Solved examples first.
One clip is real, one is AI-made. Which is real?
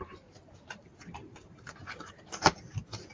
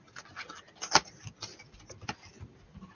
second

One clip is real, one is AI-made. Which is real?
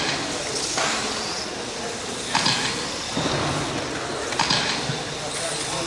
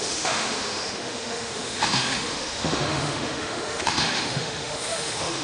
first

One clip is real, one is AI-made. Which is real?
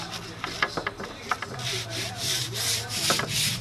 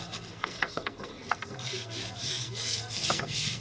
first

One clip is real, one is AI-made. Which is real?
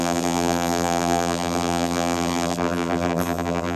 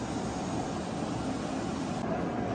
second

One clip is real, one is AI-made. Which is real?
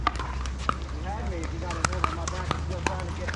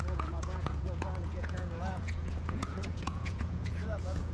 first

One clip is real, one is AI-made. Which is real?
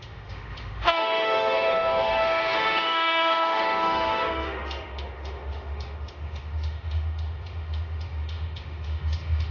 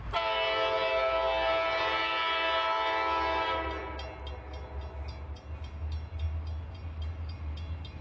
second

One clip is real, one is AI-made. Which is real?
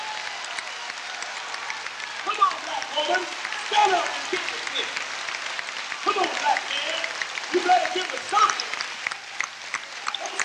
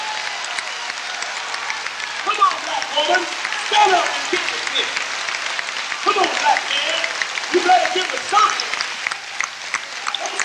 second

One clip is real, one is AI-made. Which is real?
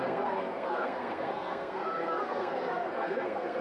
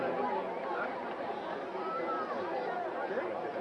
second